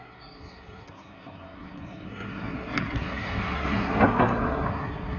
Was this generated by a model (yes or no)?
yes